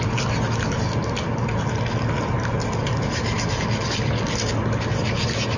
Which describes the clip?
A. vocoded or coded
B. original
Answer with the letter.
B